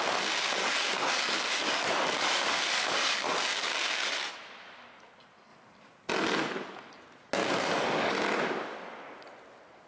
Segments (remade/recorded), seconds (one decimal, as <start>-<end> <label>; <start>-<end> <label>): 0.0-0.6 recorded; 0.6-4.3 remade; 4.3-7.4 recorded; 7.4-8.1 remade; 8.1-9.9 recorded